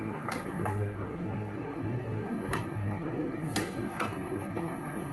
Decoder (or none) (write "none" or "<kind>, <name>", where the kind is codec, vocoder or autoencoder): codec, SNAC